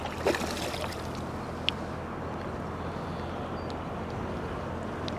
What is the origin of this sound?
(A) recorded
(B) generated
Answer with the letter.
A